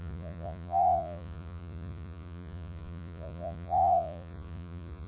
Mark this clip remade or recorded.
remade